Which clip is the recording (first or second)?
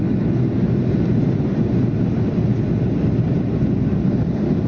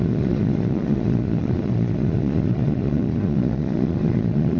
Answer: first